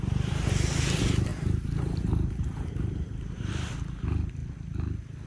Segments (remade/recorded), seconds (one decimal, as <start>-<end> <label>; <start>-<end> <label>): 0.0-1.3 recorded; 1.3-3.5 remade; 3.5-5.3 recorded